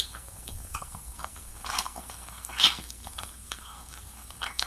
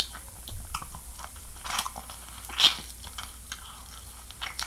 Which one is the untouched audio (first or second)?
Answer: second